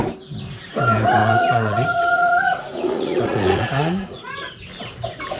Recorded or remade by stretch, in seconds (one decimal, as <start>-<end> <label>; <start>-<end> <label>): 0.0-1.2 recorded; 1.2-4.4 remade; 4.4-5.4 recorded